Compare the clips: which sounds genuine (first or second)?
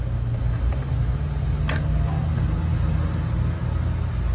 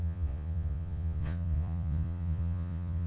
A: first